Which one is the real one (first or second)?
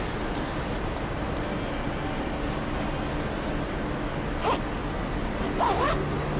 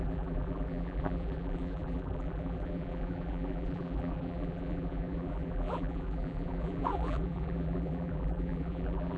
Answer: first